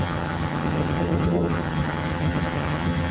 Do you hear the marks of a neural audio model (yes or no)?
yes